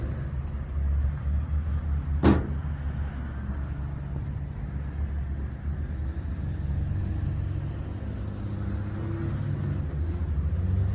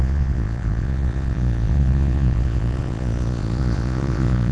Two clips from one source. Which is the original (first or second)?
first